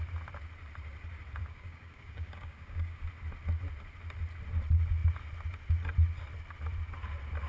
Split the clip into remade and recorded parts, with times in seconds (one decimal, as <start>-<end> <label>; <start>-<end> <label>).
0.0-1.4 recorded; 1.4-3.0 remade; 3.0-7.5 recorded